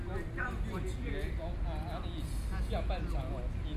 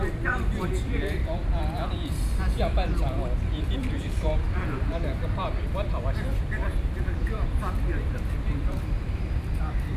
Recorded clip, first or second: first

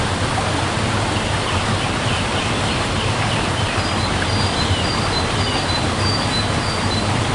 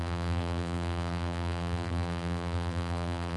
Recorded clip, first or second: first